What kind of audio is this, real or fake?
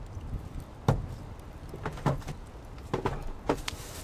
real